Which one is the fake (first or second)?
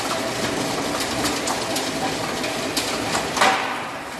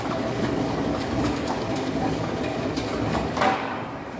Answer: second